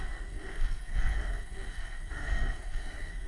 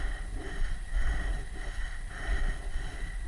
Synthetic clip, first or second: first